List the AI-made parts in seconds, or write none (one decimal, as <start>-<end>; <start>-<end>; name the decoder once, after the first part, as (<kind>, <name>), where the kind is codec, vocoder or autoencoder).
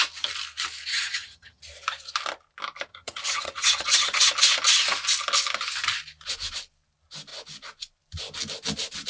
0.9-1.6 (vocoder, HiFi-GAN); 2.9-4.3